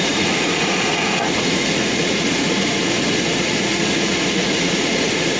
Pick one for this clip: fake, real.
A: fake